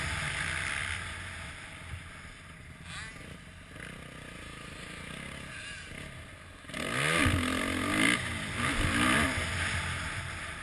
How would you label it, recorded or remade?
recorded